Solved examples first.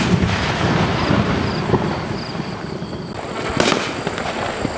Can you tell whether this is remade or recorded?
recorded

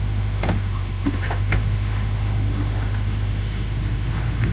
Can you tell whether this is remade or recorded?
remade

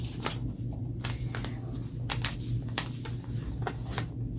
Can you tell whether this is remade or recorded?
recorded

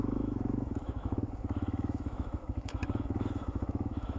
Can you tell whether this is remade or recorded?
remade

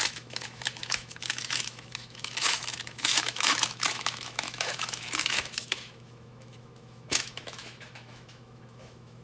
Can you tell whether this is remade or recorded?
remade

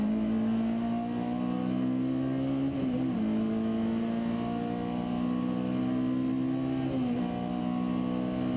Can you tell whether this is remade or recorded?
recorded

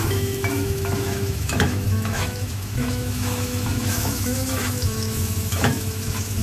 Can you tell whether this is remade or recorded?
remade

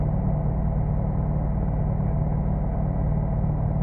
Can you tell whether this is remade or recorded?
recorded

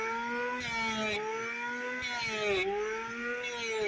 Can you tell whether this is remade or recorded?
recorded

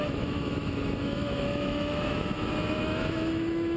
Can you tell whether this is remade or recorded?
remade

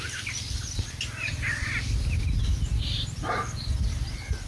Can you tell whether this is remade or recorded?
recorded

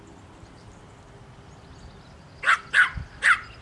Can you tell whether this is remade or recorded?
recorded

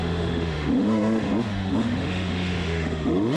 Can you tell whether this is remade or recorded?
remade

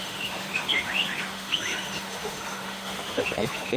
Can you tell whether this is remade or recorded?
remade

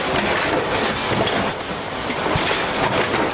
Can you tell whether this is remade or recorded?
recorded